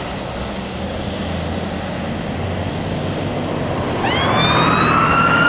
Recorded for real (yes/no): yes